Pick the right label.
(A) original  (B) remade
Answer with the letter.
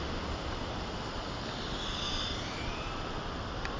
A